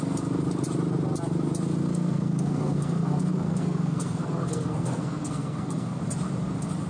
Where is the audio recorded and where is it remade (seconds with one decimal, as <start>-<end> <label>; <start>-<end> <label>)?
0.0-1.9 recorded; 1.9-6.0 remade; 6.0-6.9 recorded